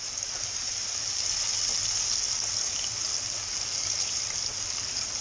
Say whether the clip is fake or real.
real